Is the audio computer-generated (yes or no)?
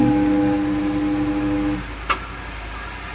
no